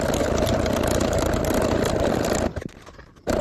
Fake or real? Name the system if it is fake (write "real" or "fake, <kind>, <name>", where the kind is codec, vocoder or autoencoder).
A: fake, vocoder, BigVGAN v2